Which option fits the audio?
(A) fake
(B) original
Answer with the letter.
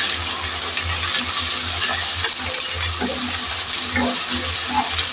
B